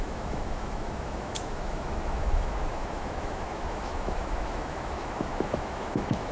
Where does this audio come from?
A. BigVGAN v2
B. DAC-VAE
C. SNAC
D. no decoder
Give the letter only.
B